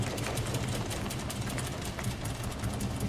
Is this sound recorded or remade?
recorded